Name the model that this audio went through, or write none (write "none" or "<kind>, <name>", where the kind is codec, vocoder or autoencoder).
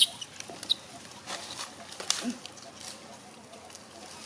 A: none